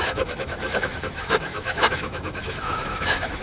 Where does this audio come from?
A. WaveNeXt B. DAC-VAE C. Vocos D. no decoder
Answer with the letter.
B